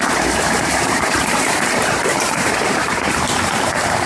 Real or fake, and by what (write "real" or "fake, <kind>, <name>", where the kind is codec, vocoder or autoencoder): fake, vocoder, BigVGAN v2